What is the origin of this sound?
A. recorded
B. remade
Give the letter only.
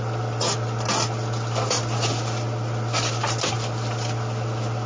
A